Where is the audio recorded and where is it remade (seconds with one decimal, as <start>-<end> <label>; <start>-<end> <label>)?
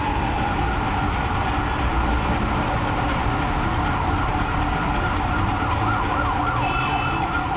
0.0-7.6 recorded